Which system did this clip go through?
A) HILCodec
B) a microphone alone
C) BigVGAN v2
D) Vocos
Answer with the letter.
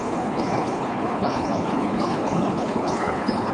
A